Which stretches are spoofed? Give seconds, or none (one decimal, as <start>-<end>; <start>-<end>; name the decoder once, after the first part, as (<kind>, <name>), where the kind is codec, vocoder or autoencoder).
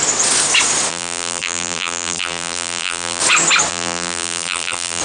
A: 0.9-3.2 (vocoder, BigVGAN v2); 3.7-5.0